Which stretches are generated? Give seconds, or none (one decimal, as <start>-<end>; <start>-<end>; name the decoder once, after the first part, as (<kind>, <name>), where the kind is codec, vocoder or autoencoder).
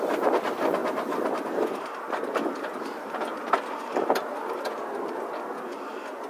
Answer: none